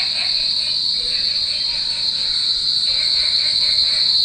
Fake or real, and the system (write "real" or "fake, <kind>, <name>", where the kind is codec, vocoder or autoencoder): real